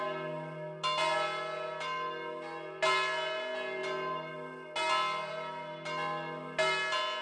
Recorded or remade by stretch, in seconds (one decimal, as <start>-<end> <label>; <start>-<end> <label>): 0.0-7.2 recorded